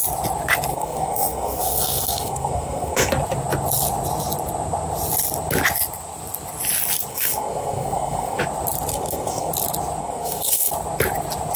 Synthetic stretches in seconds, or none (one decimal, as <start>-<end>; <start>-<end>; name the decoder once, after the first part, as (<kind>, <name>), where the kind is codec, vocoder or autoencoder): 0.7-3.1 (codec, SNAC); 7.1-8.4; 8.9-9.5; 10.0-10.7